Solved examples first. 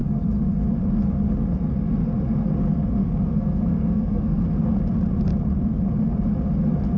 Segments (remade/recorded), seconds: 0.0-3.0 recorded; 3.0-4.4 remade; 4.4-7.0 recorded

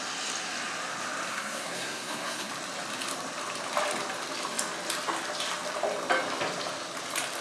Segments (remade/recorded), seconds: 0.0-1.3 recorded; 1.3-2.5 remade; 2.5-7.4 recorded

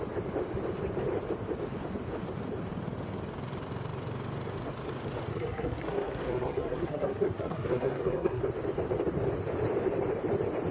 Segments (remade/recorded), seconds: 0.0-5.3 recorded; 5.3-8.4 remade; 8.4-10.7 recorded

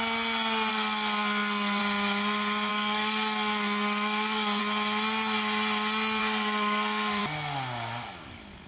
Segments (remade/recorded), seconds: 0.0-0.7 recorded; 0.7-1.8 remade; 1.8-2.7 recorded; 2.7-4.6 remade; 4.6-6.2 recorded; 6.2-7.2 remade; 7.2-8.7 recorded

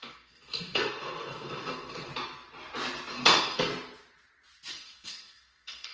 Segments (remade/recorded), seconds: 0.0-2.1 remade; 2.1-3.1 recorded; 3.1-3.7 remade; 3.7-4.7 recorded; 4.7-5.9 remade

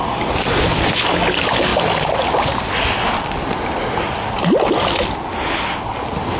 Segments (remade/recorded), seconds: 0.0-6.4 recorded